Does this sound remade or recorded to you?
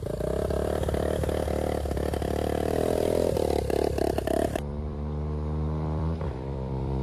remade